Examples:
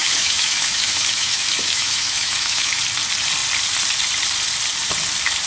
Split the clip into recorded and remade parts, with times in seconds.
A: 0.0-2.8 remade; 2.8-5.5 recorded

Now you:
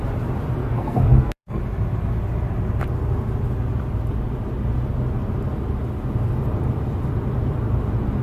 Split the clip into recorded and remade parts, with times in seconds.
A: 0.0-0.6 recorded; 0.6-1.6 remade; 1.6-8.2 recorded